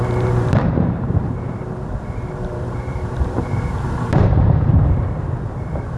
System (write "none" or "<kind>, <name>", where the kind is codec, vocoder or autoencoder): vocoder, BigVGAN v2